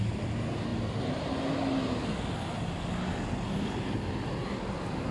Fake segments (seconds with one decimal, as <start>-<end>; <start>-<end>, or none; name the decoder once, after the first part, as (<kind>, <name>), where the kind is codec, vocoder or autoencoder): none